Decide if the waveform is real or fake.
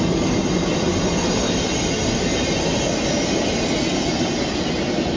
real